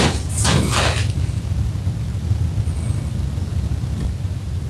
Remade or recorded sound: recorded